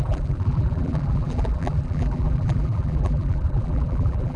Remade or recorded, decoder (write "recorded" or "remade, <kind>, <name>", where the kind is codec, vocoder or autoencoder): remade, vocoder, BigVGAN v2